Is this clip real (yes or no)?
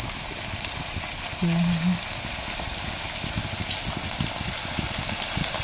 yes